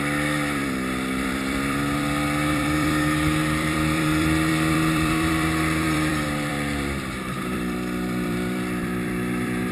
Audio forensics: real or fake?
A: fake